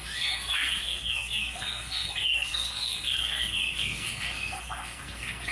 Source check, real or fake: fake